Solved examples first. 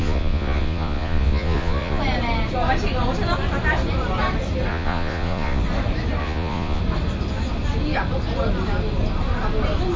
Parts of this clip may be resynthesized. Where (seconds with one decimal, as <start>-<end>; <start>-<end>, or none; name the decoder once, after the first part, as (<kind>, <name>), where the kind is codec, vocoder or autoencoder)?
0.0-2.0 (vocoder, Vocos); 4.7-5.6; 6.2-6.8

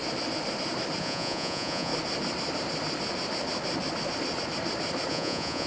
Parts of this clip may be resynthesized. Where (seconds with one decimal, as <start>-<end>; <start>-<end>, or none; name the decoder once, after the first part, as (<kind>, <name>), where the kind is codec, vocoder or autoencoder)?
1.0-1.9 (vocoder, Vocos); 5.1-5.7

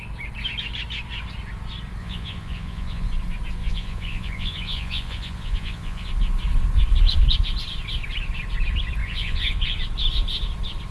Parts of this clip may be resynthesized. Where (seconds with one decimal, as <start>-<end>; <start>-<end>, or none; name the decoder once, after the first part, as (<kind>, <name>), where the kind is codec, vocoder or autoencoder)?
2.0-3.1 (vocoder, Vocos); 3.6-6.1; 9.0-9.8

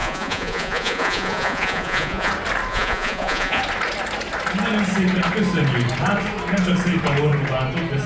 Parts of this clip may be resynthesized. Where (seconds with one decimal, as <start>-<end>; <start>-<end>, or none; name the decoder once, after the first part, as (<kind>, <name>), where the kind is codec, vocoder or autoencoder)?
0.0-2.3 (vocoder, Vocos); 2.7-3.6